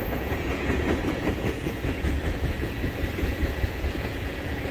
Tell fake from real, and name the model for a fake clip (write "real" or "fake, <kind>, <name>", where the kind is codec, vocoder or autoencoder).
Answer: fake, vocoder, Vocos